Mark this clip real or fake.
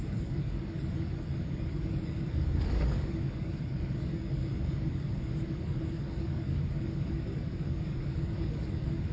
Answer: fake